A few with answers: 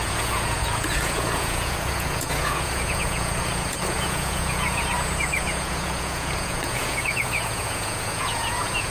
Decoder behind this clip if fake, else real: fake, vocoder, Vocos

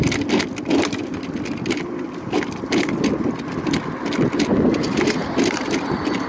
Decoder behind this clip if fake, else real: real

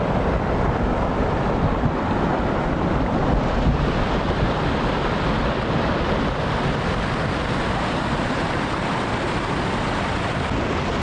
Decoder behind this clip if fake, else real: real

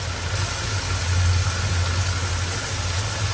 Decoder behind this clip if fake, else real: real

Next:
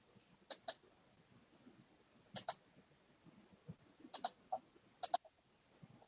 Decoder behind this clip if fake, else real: real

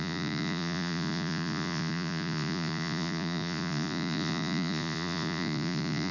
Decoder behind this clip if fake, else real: fake, vocoder, Vocos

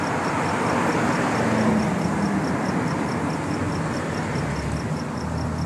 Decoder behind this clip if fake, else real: real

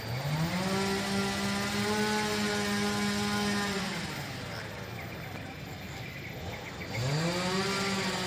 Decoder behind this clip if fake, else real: real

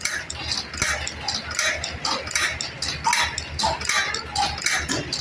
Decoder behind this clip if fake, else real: real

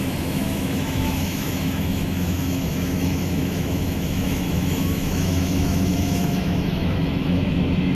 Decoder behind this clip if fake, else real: fake, autoencoder, DAC-VAE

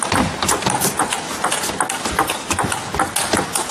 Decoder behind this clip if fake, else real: real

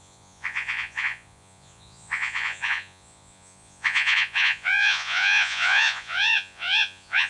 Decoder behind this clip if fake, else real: fake, vocoder, Vocos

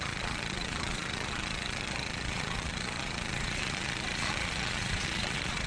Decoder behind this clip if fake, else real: fake, vocoder, Vocos